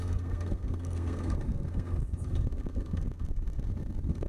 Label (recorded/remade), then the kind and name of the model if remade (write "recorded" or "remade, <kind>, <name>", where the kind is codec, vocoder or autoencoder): remade, codec, SNAC